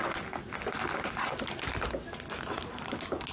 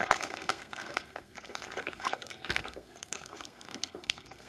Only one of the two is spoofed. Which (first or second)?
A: second